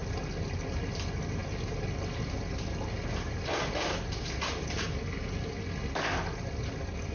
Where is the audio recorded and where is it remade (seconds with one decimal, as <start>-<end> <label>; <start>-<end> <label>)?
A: 0.0-7.1 recorded